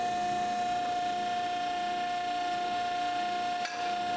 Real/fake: real